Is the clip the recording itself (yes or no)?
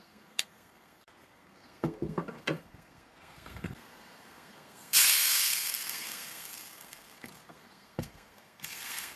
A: no